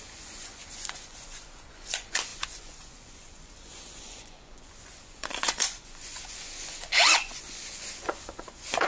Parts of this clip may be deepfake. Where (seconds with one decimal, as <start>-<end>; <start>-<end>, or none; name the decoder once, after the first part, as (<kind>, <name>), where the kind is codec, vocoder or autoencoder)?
0.0-8.9 (vocoder, Vocos)

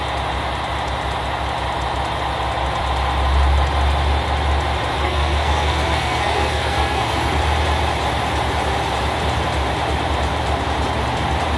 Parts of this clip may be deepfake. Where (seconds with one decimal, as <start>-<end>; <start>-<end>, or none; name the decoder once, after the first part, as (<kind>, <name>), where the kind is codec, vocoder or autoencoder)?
5.0-7.4 (codec, SNAC)

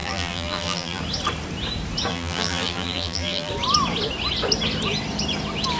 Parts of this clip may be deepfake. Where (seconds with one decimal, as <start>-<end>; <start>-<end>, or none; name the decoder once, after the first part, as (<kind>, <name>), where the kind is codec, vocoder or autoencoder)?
0.0-1.0 (vocoder, BigVGAN v2); 2.1-3.5

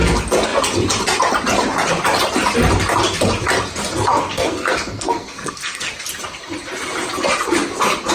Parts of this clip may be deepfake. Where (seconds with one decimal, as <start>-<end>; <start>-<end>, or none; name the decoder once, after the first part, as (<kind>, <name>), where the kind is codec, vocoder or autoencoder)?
3.9-5.9 (codec, SNAC)

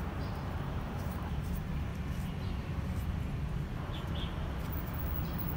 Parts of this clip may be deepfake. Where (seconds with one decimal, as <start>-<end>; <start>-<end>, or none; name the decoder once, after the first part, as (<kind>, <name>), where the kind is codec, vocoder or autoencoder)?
0.0-1.9 (vocoder, BigVGAN v2)